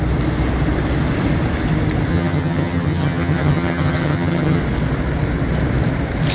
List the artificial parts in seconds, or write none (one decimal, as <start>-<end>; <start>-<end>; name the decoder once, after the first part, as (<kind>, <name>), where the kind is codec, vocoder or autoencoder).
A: 2.1-4.6 (vocoder, HiFi-GAN)